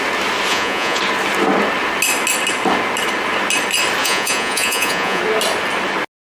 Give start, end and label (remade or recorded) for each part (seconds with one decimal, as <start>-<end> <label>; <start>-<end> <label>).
0.0-0.5 recorded; 0.5-1.0 remade; 1.0-4.0 recorded; 4.0-5.2 remade; 5.2-6.2 recorded